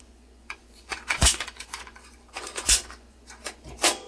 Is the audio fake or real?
fake